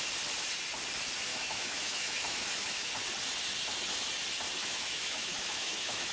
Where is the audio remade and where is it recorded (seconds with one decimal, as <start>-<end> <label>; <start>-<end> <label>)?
0.0-1.3 recorded; 1.3-2.9 remade; 2.9-4.6 recorded; 4.6-6.1 remade